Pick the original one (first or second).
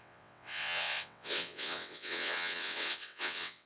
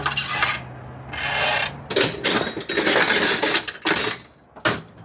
second